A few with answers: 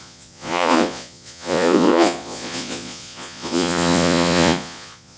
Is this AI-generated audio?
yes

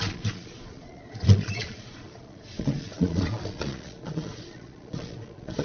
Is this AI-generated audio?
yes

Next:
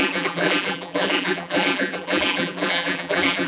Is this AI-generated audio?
yes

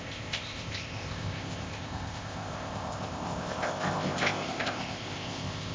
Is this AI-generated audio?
yes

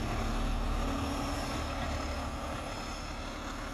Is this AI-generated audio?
no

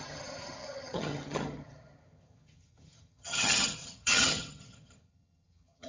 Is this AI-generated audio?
yes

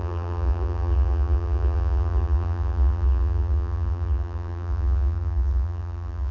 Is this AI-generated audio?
yes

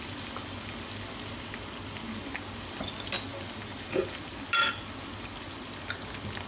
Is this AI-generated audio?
no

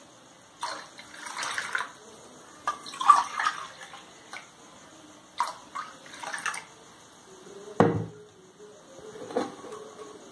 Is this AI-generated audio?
no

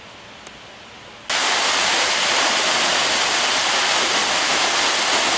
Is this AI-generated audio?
no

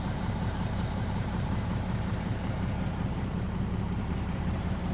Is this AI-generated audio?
yes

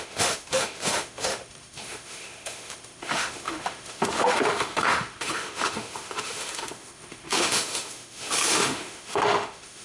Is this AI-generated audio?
yes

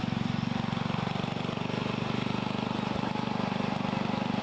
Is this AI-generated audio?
no